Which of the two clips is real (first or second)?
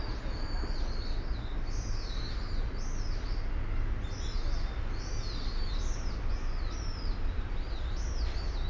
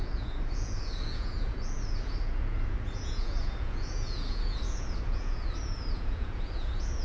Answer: first